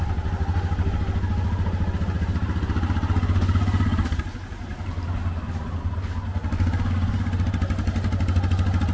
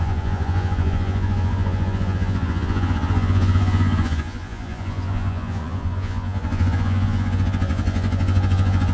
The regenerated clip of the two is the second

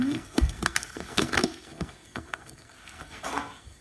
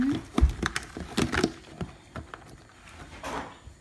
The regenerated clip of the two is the first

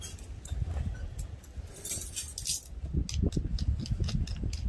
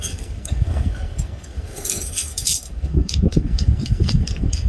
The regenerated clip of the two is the second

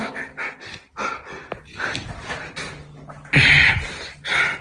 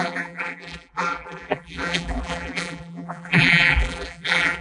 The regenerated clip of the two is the second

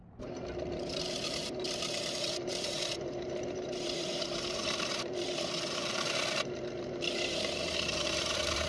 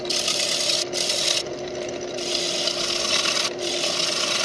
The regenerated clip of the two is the first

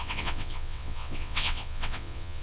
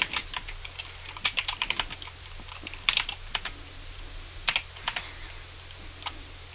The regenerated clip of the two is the first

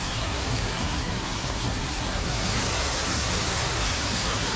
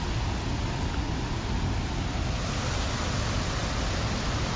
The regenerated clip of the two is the first